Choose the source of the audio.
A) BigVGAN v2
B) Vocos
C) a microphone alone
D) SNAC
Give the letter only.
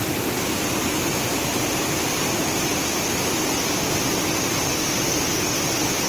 C